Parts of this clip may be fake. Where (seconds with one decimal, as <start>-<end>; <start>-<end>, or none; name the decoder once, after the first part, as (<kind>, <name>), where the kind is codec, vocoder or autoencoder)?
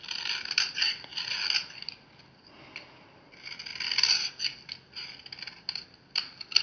none